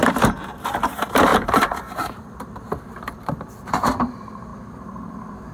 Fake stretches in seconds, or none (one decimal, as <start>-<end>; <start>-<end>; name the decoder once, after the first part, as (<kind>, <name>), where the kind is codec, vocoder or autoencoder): 0.0-5.5 (vocoder, BigVGAN v2)